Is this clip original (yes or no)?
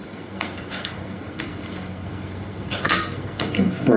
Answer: no